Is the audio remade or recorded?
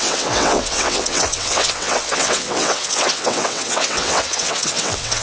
remade